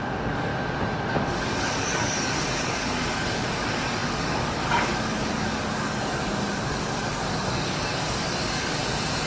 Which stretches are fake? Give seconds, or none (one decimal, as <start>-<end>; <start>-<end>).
0.0-0.5; 1.1-8.8